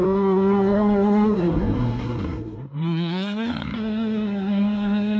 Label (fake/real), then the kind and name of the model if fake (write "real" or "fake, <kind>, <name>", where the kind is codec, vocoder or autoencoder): fake, codec, SNAC